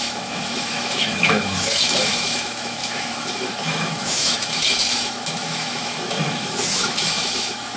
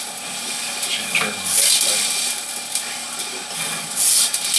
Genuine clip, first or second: second